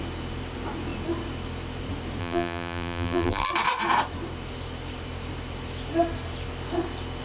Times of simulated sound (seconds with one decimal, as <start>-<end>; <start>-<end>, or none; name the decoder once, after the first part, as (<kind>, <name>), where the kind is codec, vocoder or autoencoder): 2.2-3.5 (vocoder, BigVGAN v2)